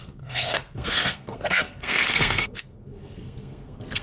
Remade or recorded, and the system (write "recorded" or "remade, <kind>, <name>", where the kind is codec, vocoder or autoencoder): remade, codec, SNAC